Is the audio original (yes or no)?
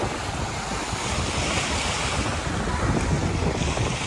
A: yes